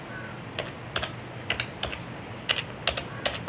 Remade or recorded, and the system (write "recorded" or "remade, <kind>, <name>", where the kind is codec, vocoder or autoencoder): recorded